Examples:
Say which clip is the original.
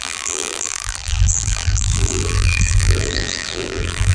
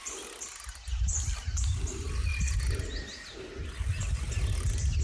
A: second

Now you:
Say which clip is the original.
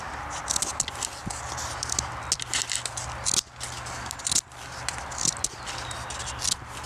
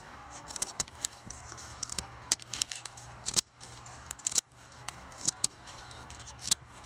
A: first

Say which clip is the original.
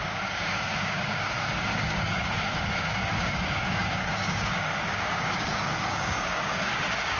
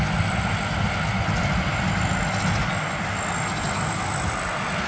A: second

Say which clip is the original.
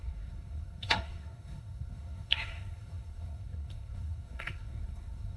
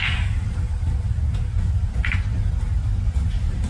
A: second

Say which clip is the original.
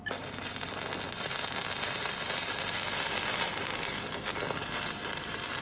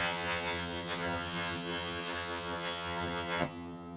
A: first